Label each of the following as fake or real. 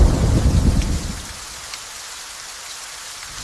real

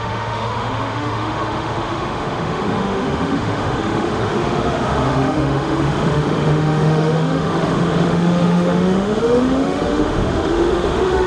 fake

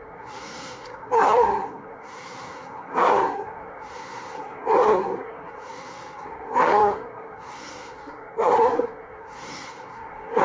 fake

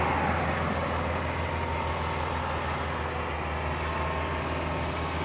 real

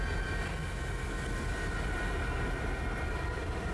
fake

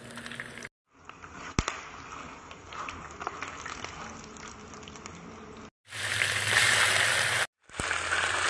real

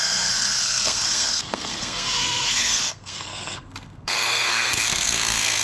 fake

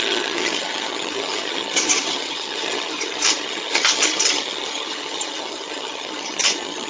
fake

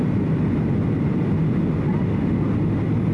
real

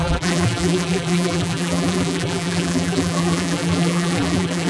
fake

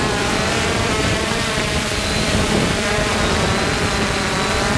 fake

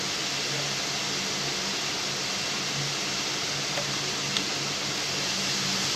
real